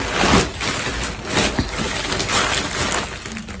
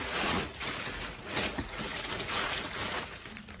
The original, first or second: first